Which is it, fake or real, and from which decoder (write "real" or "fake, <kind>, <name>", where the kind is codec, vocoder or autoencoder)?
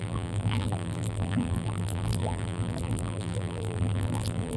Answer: fake, vocoder, BigVGAN v2